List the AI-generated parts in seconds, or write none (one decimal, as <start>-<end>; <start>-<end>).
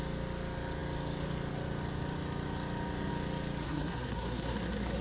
3.6-5.0